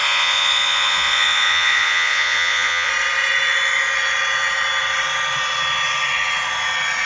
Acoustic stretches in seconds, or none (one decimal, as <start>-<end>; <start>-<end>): 2.9-7.1